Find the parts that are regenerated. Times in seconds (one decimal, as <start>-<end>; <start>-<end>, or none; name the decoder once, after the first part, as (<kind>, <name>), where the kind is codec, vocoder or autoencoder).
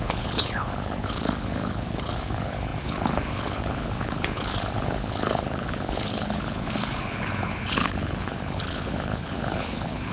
0.0-10.1 (codec, HILCodec)